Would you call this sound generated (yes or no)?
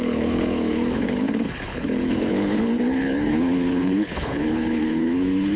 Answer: yes